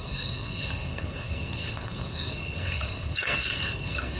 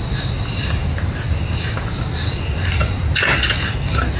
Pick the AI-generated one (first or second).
first